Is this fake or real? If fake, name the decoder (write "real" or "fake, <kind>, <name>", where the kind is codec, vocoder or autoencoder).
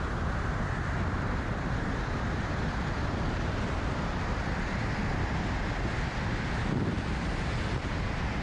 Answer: real